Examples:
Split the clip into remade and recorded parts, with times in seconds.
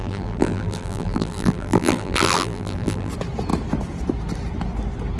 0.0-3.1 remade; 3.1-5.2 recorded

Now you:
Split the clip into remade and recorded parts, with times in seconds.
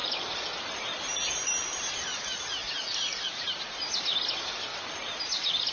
0.0-2.2 remade; 2.2-2.6 recorded; 2.6-3.3 remade; 3.3-5.7 recorded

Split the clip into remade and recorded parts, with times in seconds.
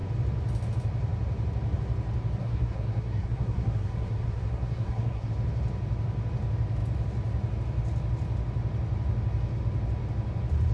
0.0-2.4 recorded; 2.4-5.3 remade; 5.3-10.7 recorded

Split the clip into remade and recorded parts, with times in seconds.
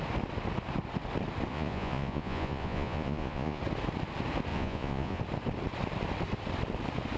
0.0-1.5 recorded; 1.5-3.6 remade; 3.6-4.5 recorded; 4.5-5.2 remade; 5.2-7.2 recorded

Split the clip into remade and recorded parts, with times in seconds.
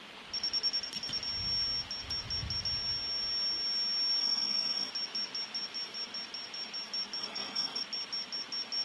0.0-4.2 recorded; 4.2-4.9 remade; 4.9-7.2 recorded; 7.2-7.8 remade; 7.8-8.8 recorded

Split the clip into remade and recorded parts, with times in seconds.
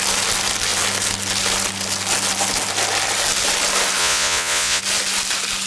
0.0-4.0 recorded; 4.0-4.8 remade; 4.8-5.7 recorded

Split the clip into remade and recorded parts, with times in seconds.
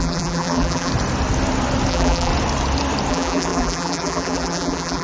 0.0-0.9 remade; 0.9-1.9 recorded; 1.9-2.3 remade; 2.3-3.1 recorded; 3.1-5.0 remade